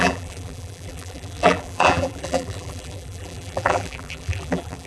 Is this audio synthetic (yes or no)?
yes